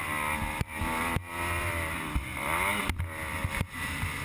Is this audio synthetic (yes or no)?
no